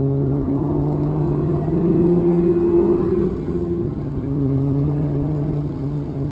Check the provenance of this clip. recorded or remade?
remade